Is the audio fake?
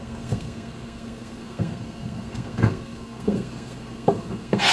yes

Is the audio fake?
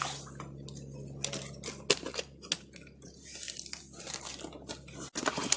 no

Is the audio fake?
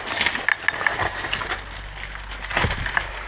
no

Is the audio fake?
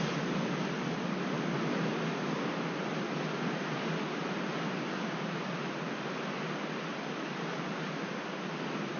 no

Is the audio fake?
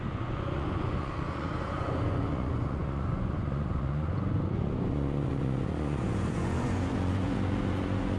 yes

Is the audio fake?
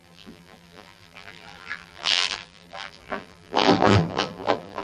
yes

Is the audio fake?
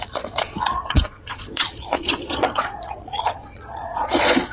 yes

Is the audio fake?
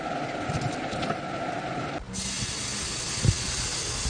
no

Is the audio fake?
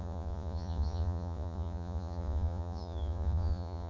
yes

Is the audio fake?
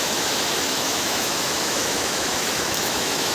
yes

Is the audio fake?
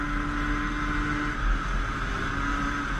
no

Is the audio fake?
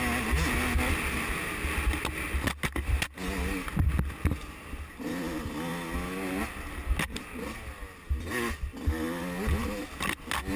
no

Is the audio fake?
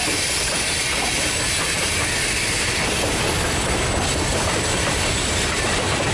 no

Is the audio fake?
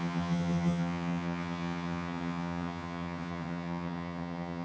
yes